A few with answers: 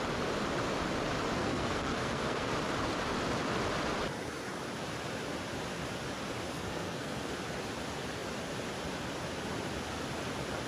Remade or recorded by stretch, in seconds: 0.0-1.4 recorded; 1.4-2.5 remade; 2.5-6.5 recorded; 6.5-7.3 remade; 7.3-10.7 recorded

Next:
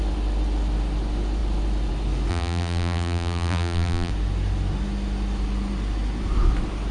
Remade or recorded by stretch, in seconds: 0.0-2.3 recorded; 2.3-4.1 remade; 4.1-6.9 recorded

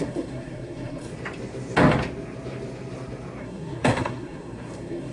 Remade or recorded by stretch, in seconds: 0.0-1.1 remade; 1.1-3.4 recorded; 3.4-5.1 remade

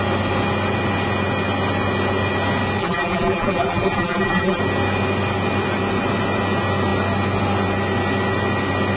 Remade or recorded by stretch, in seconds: 0.0-2.8 recorded; 2.8-4.6 remade; 4.6-9.0 recorded

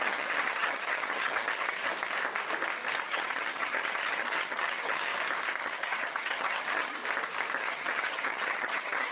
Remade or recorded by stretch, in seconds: 0.0-1.9 remade; 1.9-3.0 recorded; 3.0-5.1 remade; 5.1-5.6 recorded; 5.6-7.0 remade; 7.0-7.6 recorded; 7.6-9.1 remade

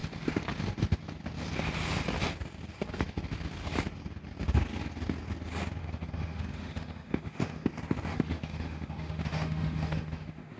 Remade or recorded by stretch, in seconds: 0.0-5.8 recorded; 5.8-7.7 remade; 7.7-8.1 recorded; 8.1-10.6 remade